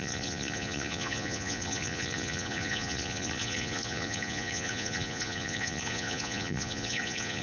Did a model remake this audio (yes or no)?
yes